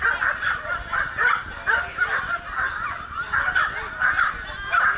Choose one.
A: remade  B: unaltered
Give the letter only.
B